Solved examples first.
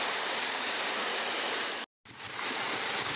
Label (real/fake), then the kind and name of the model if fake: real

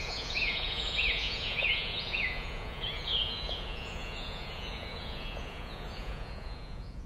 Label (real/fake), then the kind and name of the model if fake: fake, vocoder, Vocos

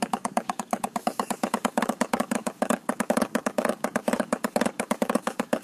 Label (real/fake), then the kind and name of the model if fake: fake, codec, DAC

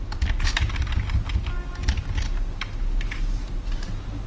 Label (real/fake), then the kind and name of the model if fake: real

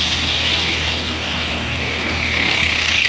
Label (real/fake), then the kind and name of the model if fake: fake, codec, DAC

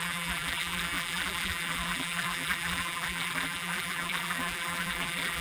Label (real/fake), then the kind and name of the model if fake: fake, vocoder, BigVGAN v2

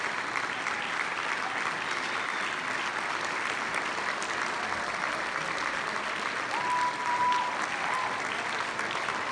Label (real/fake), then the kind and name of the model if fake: real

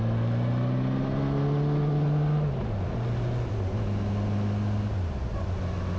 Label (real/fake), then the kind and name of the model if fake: real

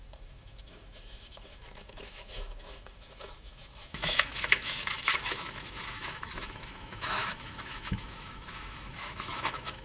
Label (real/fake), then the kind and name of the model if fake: fake, autoencoder, DAC-VAE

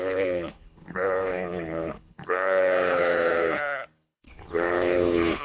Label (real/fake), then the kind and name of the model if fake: fake, codec, HILCodec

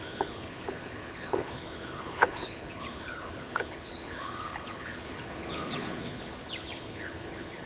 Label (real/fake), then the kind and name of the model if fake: fake, codec, HILCodec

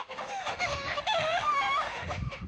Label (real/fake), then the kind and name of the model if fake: fake, autoencoder, DAC-VAE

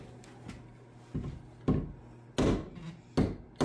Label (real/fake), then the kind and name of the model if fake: real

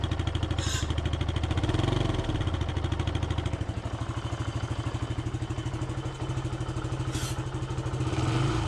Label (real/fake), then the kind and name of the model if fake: real